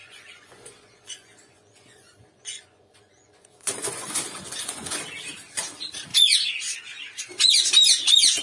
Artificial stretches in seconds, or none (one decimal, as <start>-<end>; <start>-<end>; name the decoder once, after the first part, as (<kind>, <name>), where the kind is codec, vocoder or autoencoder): 0.0-5.0 (vocoder, Vocos)